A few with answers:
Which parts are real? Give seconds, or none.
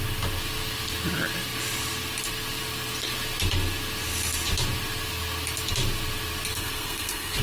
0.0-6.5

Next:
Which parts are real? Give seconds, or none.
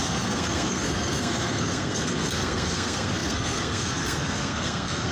none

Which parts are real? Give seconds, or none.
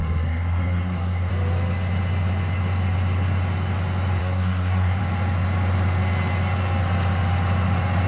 1.3-4.2; 5.0-8.1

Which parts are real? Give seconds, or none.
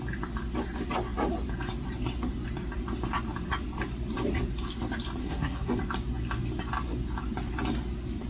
0.0-5.2; 5.8-8.3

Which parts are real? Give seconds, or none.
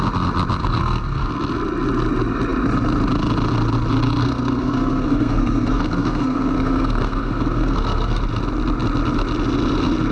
0.0-0.6; 1.3-4.2; 8.2-10.1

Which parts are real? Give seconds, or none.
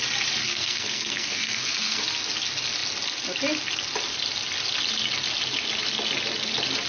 0.0-0.4; 2.0-6.9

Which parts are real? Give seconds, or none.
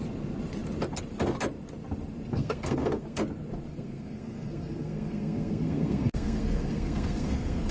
0.0-2.3; 3.2-3.7